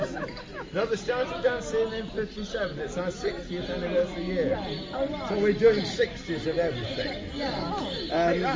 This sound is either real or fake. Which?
real